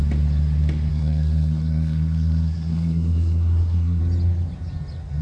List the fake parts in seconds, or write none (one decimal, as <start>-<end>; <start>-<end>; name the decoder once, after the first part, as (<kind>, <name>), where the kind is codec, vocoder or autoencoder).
0.9-4.0 (codec, SNAC)